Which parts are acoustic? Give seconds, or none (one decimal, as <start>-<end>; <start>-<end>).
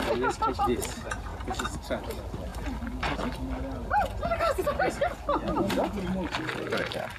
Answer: 0.0-7.2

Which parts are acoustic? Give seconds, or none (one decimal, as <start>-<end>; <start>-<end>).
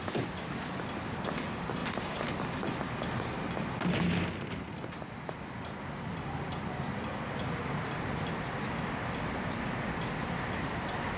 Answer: 0.0-11.2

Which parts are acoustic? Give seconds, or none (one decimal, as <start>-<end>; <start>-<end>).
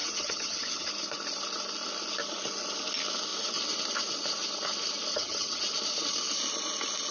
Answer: 0.9-5.1; 5.6-7.1